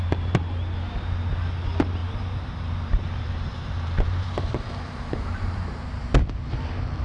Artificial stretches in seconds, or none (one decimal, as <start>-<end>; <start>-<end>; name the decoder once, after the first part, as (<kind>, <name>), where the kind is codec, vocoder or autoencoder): 2.0-6.1 (vocoder, BigVGAN v2)